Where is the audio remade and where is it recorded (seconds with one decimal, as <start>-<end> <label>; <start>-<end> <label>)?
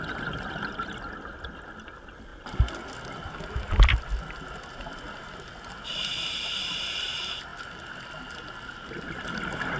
0.0-9.8 recorded